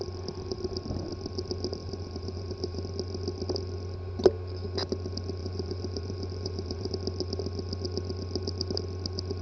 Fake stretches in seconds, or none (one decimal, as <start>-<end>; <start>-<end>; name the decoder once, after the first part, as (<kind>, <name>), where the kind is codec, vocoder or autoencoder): 1.8-2.8 (vocoder, BigVGAN v2); 5.4-6.9